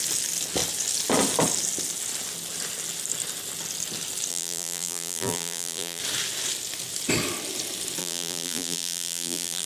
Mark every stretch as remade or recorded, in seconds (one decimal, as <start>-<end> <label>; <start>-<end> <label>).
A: 0.0-4.3 recorded; 4.3-6.0 remade; 6.0-8.0 recorded; 8.0-9.7 remade